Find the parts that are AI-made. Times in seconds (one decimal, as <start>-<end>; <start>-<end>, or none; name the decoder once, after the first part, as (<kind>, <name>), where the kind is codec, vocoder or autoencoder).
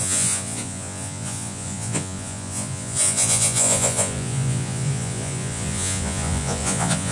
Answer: 0.0-7.1 (vocoder, Vocos)